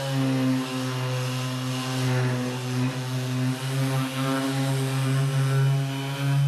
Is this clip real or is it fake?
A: real